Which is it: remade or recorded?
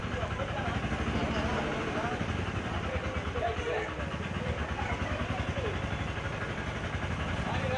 recorded